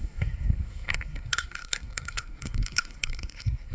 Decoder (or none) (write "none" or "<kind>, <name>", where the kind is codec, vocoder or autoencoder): codec, SNAC